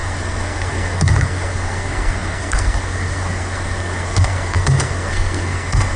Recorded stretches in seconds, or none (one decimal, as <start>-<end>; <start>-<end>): none